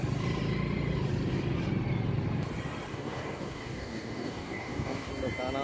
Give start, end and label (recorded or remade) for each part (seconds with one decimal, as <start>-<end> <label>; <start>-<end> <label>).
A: 0.0-2.9 recorded; 2.9-5.1 remade; 5.1-5.6 recorded